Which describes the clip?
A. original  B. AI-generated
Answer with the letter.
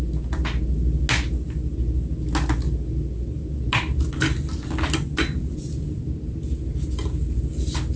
A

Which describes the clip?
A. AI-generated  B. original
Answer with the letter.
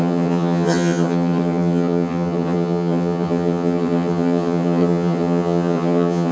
A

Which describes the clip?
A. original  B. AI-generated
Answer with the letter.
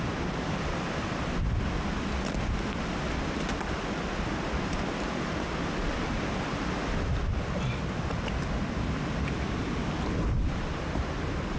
A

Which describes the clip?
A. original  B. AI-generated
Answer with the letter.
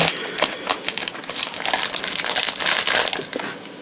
A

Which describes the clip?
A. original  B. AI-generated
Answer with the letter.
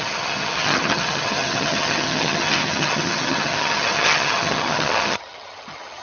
B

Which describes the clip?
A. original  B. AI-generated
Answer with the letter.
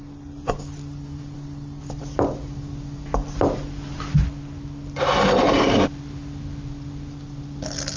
A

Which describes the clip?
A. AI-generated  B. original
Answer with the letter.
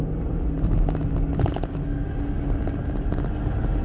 B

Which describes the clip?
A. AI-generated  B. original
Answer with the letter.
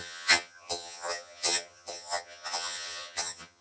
A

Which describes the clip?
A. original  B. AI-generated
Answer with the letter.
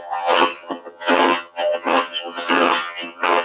B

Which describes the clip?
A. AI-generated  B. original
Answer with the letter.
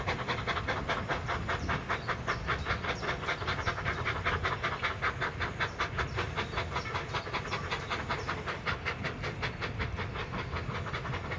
B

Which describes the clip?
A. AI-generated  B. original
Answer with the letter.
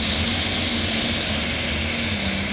B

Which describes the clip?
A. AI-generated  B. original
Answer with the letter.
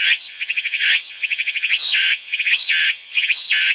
A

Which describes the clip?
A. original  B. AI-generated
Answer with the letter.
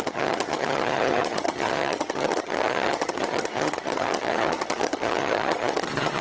B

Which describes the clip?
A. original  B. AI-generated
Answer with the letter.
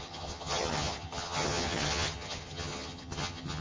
B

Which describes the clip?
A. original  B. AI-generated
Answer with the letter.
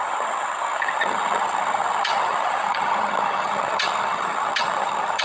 B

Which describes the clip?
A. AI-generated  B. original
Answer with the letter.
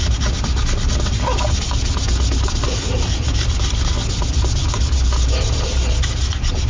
B